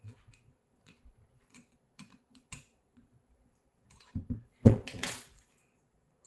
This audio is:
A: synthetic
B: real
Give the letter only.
A